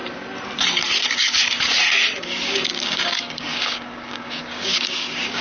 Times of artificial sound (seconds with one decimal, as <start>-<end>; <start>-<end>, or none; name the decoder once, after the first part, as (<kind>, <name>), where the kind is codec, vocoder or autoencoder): 2.2-5.4 (codec, DAC)